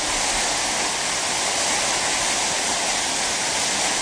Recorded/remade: recorded